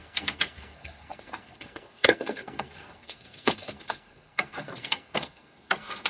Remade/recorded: remade